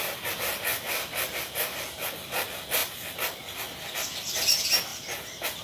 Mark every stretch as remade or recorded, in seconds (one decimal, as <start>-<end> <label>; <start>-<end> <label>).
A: 0.0-5.6 recorded